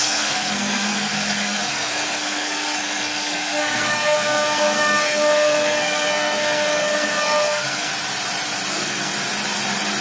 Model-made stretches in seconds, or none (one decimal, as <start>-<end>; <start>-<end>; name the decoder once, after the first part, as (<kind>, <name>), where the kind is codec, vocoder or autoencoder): 0.0-7.9 (codec, SNAC); 8.7-9.1